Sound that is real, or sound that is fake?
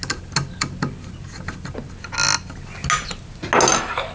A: real